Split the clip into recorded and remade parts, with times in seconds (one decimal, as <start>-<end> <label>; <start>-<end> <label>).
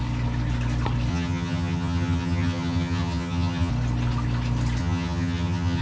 0.0-1.1 recorded; 1.1-3.7 remade; 3.7-4.8 recorded; 4.8-5.8 remade